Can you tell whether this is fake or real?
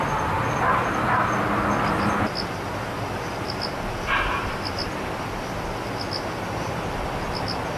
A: real